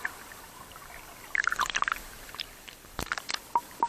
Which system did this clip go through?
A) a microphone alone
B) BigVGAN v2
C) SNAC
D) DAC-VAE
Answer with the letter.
B